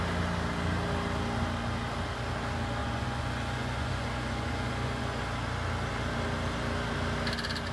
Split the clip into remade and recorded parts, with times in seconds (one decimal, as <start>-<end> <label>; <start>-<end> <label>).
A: 0.0-2.8 recorded; 2.8-5.2 remade; 5.2-7.7 recorded